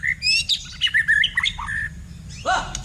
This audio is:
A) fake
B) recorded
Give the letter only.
B